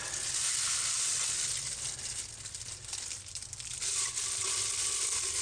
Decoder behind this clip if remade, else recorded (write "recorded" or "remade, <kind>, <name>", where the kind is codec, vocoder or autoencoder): recorded